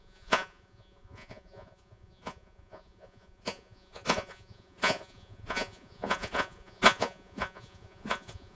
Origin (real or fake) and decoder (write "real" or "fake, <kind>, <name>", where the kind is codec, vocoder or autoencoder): fake, vocoder, Vocos